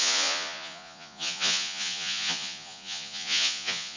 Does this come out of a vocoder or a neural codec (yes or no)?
yes